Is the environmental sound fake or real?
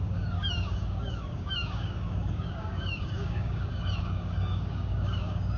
fake